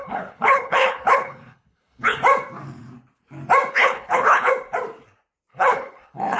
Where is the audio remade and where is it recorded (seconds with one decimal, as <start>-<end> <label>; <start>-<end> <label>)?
0.0-2.2 remade; 2.2-3.7 recorded; 3.7-4.5 remade; 4.5-5.5 recorded; 5.5-6.4 remade